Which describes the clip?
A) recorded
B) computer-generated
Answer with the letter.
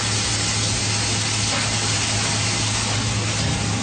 A